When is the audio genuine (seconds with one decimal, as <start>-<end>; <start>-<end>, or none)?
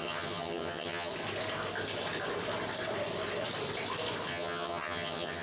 1.1-4.3